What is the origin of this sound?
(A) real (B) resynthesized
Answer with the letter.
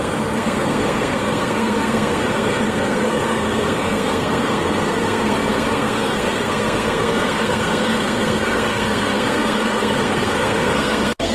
B